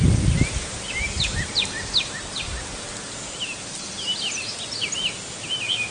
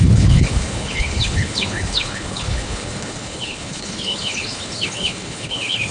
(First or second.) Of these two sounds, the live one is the first